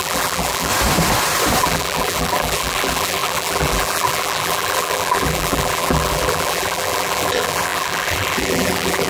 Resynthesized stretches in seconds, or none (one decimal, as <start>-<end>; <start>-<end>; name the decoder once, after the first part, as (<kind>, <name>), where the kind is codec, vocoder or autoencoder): 0.0-0.7 (vocoder, BigVGAN v2); 1.6-9.1